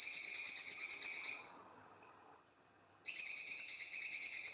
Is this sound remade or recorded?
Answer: remade